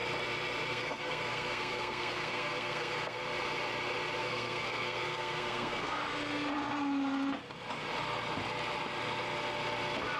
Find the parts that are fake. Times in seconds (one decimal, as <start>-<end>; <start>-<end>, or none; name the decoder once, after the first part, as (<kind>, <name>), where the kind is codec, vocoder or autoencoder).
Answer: 0.7-3.2 (codec, SNAC); 4.2-6.0